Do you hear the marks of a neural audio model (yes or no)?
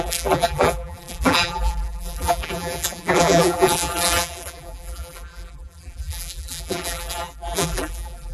yes